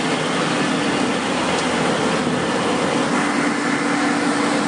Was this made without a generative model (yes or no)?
yes